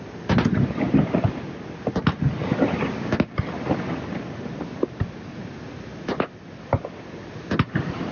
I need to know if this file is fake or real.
real